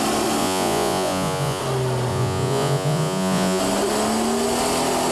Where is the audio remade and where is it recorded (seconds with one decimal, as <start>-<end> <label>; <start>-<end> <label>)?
0.0-0.4 recorded; 0.4-1.6 remade; 1.6-2.1 recorded; 2.1-3.6 remade; 3.6-5.1 recorded